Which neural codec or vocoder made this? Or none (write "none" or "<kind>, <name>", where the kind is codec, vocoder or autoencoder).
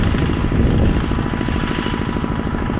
none